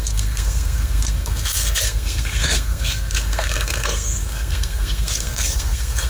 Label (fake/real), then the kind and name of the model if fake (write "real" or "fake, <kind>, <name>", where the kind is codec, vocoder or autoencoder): fake, codec, SNAC